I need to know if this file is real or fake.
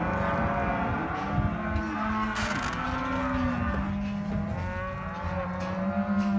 real